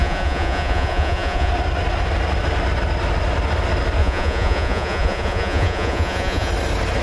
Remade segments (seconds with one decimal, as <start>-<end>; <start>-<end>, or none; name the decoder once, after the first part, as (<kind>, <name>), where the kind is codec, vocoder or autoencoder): 0.0-1.5 (vocoder, Vocos); 4.0-6.5